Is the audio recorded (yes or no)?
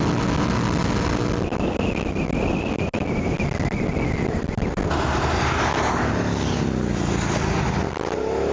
yes